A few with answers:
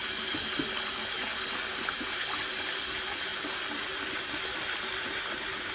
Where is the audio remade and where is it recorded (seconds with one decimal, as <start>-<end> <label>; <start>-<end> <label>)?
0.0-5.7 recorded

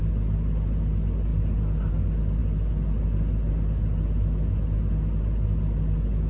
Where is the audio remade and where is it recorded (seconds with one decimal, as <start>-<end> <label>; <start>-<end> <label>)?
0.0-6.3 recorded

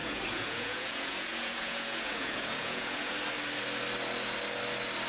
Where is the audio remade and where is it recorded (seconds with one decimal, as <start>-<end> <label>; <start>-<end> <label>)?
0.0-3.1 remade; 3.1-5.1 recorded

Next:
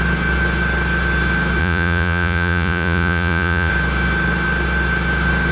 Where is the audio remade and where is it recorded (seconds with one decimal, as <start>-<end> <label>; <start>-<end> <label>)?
0.0-1.6 recorded; 1.6-3.7 remade; 3.7-5.5 recorded

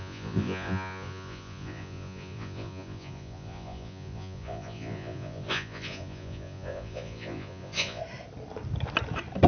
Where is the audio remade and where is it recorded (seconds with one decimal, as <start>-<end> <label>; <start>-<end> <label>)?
0.0-8.0 remade; 8.0-9.5 recorded

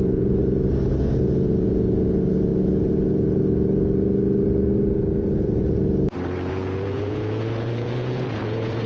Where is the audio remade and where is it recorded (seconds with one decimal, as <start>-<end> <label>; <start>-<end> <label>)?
0.0-0.4 remade; 0.4-1.0 recorded; 1.0-2.5 remade; 2.5-6.5 recorded; 6.5-8.9 remade